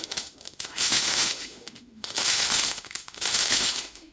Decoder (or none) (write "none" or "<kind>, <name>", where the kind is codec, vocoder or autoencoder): autoencoder, DAC-VAE